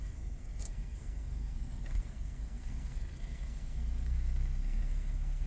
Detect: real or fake fake